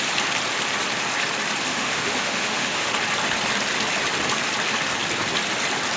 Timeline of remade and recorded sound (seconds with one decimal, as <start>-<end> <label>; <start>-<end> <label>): 0.0-1.7 recorded; 1.7-2.9 remade; 2.9-6.0 recorded